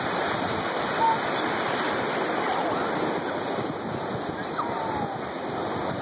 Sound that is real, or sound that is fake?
real